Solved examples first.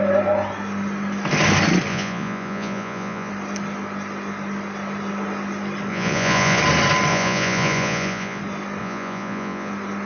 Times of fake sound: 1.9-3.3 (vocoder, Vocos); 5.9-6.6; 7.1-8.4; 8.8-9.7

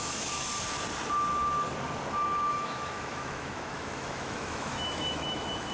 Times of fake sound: 0.0-0.5 (autoencoder, DAC-VAE); 2.5-5.7

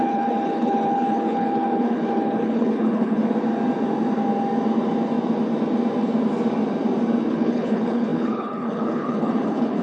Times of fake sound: 0.0-3.2 (codec, HILCodec); 7.3-9.8

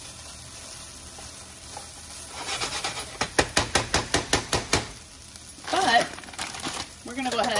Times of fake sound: 5.7-7.6 (vocoder, BigVGAN v2)

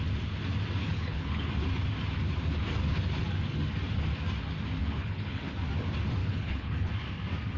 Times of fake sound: 0.8-1.5 (codec, HILCodec); 4.8-5.4; 6.2-6.9